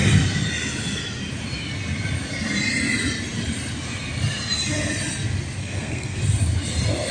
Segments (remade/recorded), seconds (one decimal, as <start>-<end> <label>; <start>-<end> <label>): 0.0-5.6 recorded; 5.6-6.2 remade; 6.2-7.1 recorded